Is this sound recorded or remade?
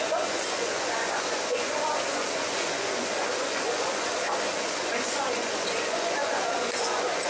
remade